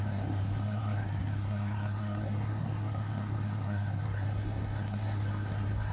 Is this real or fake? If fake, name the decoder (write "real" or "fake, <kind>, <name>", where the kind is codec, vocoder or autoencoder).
fake, codec, SNAC